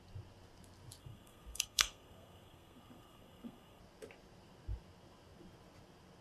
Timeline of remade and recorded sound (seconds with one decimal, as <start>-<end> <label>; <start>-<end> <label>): 0.0-1.0 recorded; 1.0-3.8 remade; 3.8-6.2 recorded